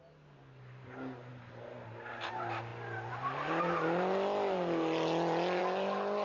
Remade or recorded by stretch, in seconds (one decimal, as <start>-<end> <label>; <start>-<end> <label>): 0.0-6.2 recorded